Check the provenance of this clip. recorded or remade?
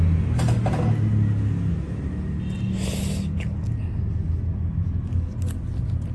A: recorded